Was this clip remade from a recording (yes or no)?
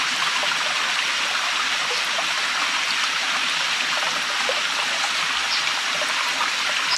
no